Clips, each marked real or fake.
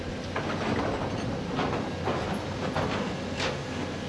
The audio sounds real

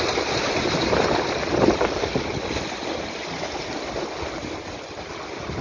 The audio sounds real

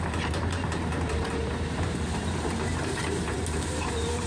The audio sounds fake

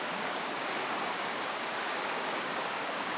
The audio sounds fake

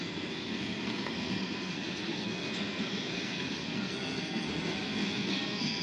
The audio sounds fake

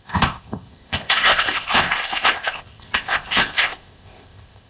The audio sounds fake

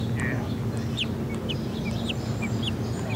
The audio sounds real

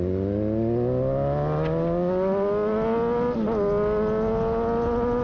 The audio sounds real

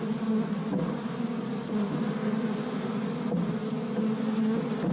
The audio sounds real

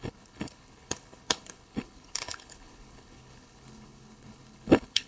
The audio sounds fake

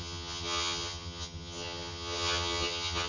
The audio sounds fake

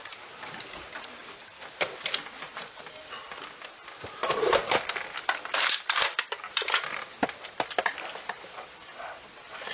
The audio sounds real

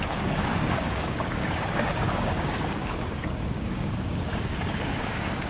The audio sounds fake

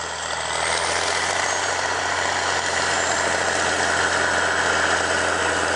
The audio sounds real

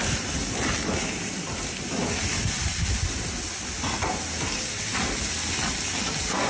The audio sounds real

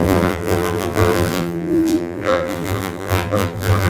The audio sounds fake